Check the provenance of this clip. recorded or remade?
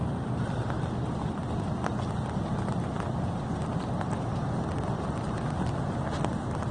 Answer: recorded